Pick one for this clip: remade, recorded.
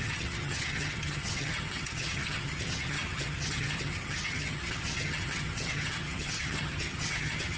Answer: remade